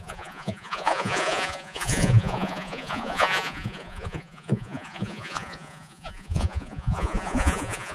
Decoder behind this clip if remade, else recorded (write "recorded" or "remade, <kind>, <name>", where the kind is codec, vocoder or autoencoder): remade, vocoder, Vocos